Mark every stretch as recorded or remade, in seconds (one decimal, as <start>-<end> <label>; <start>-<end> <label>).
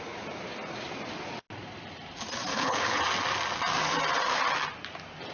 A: 0.0-2.5 recorded; 2.5-3.0 remade; 3.0-5.3 recorded